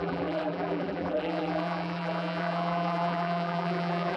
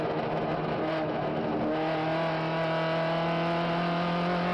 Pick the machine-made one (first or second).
first